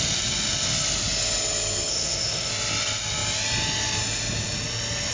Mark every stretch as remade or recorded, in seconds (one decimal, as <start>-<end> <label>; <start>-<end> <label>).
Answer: 0.0-1.9 recorded; 1.9-2.5 remade; 2.5-5.1 recorded